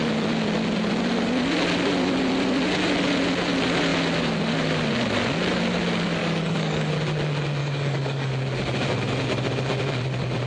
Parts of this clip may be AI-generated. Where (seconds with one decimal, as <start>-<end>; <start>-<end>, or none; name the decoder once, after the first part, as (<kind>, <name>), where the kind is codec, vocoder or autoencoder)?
6.2-6.9 (codec, DAC); 7.6-8.3